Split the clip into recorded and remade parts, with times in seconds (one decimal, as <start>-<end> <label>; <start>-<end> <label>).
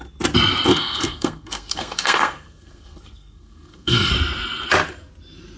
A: 0.0-0.7 recorded; 0.7-4.1 remade; 4.1-5.6 recorded